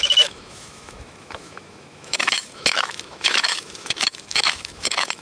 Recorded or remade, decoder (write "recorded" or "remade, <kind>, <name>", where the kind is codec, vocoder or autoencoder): remade, autoencoder, DAC-VAE